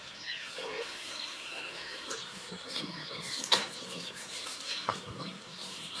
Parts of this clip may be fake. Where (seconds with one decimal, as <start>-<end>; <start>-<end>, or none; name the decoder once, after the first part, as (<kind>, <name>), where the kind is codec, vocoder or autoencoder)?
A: 0.0-6.0 (codec, SNAC)